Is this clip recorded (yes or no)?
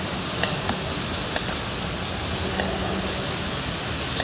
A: yes